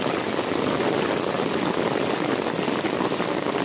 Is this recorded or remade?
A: recorded